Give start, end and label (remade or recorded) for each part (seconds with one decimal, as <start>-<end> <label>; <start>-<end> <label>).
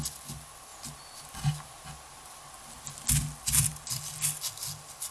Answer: 0.0-5.1 recorded